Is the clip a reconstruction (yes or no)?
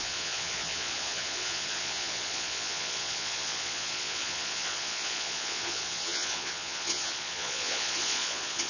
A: yes